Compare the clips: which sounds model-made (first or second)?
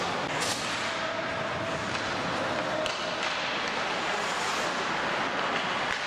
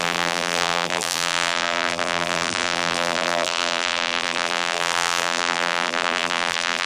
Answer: second